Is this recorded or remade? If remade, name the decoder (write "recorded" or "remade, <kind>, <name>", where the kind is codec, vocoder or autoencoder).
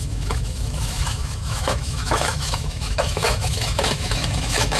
remade, autoencoder, DAC-VAE